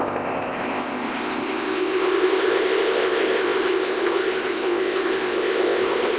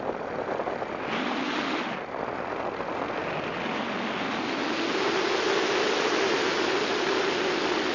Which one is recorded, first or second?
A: second